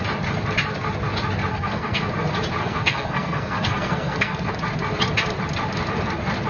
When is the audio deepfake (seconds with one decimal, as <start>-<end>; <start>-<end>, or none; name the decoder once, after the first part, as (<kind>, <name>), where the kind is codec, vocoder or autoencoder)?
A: 1.5-2.1 (codec, SNAC); 2.6-4.5